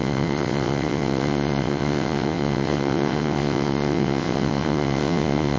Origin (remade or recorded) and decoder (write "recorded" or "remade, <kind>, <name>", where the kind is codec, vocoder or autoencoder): remade, vocoder, WaveNeXt